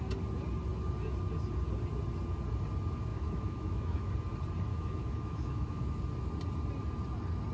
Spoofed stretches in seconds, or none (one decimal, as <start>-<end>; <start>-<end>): 3.1-4.1; 4.7-6.0